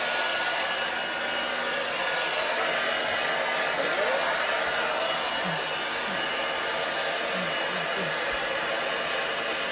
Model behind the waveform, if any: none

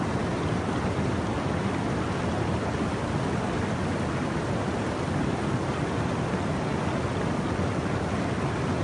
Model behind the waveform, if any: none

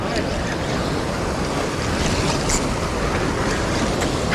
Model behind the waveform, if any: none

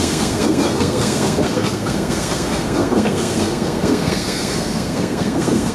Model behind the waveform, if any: codec, SNAC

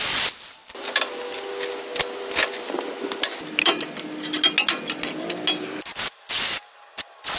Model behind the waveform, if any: none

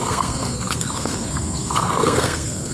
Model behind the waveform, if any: codec, SNAC